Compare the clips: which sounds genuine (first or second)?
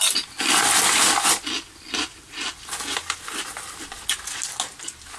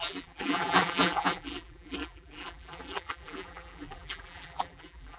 first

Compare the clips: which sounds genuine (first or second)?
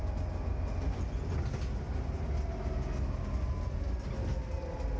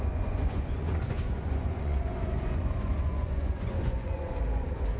first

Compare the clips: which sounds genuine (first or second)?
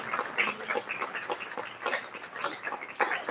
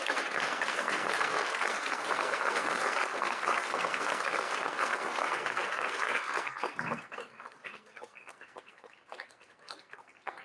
first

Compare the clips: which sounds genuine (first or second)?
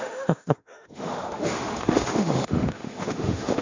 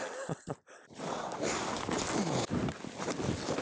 second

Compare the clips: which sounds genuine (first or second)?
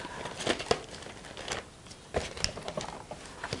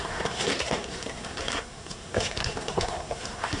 first